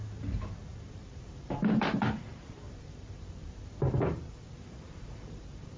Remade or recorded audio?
remade